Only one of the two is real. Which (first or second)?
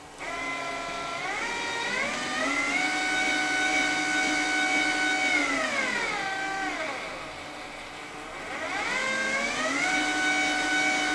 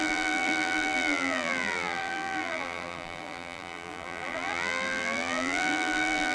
first